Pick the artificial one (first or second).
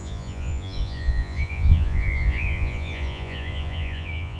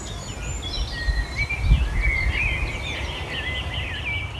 first